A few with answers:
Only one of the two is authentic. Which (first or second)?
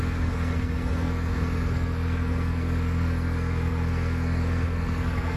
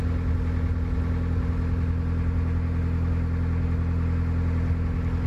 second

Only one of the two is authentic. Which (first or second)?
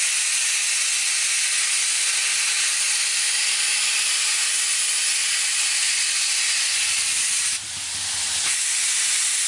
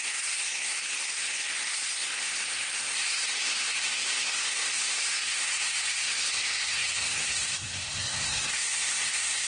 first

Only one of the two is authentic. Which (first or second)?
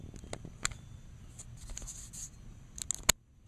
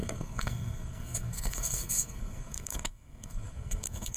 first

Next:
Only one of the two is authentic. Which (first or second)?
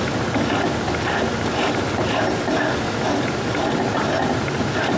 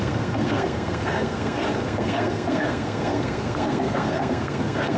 first